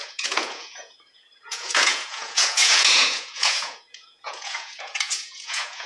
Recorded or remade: remade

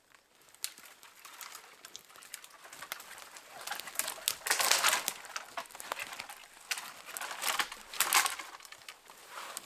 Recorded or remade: recorded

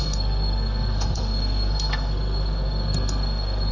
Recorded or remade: remade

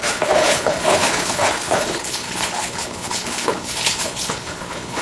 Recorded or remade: remade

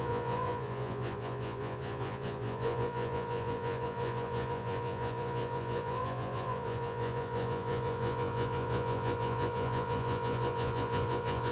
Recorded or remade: remade